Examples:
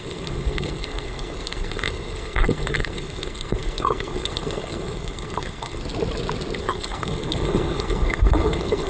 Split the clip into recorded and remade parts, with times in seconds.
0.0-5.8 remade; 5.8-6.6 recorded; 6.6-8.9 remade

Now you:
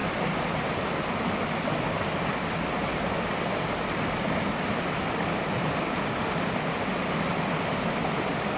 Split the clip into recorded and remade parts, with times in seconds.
0.0-8.6 recorded

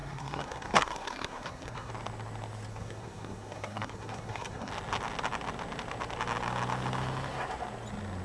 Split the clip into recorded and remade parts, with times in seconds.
0.0-1.9 remade; 1.9-2.7 recorded; 2.7-4.7 remade; 4.7-8.2 recorded

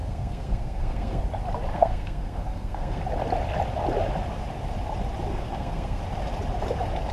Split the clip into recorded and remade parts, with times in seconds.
0.0-1.2 remade; 1.2-1.7 recorded; 1.7-3.0 remade; 3.0-5.3 recorded; 5.3-6.0 remade; 6.0-7.1 recorded

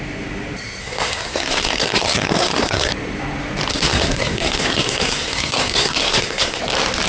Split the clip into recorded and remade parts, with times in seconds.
0.0-0.8 recorded; 0.8-2.9 remade; 2.9-3.7 recorded; 3.7-6.6 remade; 6.6-7.1 recorded

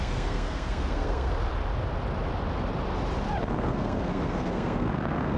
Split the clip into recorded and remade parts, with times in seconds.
0.0-1.3 remade; 1.3-3.5 recorded; 3.5-5.4 remade